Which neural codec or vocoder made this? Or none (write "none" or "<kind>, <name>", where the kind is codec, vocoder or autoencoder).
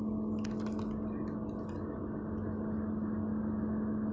none